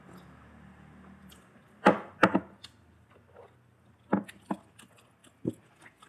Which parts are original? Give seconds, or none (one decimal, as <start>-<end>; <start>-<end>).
0.0-6.1